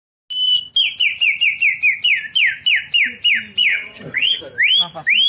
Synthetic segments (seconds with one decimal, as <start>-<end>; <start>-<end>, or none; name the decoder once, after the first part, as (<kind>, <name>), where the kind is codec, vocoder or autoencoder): 3.7-4.4 (vocoder, HiFi-GAN)